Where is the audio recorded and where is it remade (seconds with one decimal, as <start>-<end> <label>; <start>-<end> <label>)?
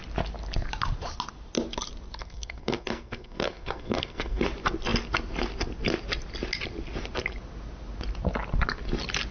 0.0-2.2 recorded; 2.2-4.4 remade; 4.4-9.3 recorded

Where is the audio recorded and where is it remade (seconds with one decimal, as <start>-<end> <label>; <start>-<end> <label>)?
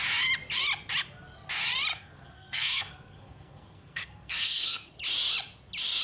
0.0-1.9 recorded; 1.9-4.9 remade; 4.9-6.0 recorded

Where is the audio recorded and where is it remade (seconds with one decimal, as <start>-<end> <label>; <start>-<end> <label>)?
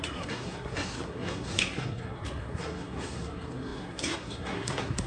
0.0-5.1 remade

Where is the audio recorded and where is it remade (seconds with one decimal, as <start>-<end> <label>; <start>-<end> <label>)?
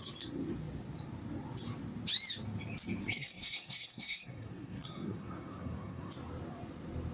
0.0-3.0 recorded; 3.0-6.1 remade; 6.1-7.1 recorded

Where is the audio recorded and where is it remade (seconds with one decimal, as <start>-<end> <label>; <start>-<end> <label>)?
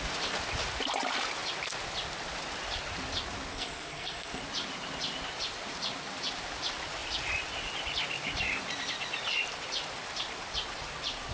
0.0-3.5 recorded; 3.5-4.4 remade; 4.4-11.3 recorded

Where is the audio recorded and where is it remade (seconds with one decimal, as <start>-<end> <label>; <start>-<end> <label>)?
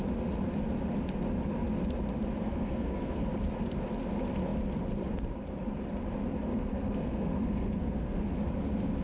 0.0-2.4 recorded; 2.4-3.2 remade; 3.2-6.5 recorded; 6.5-8.3 remade; 8.3-9.0 recorded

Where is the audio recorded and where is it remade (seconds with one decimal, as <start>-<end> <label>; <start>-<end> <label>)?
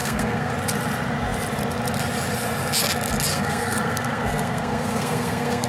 0.0-0.5 remade; 0.5-3.3 recorded; 3.3-5.7 remade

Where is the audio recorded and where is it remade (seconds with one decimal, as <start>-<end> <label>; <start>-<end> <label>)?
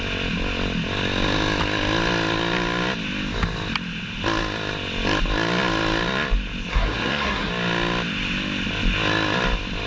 0.0-6.7 recorded; 6.7-7.5 remade; 7.5-9.9 recorded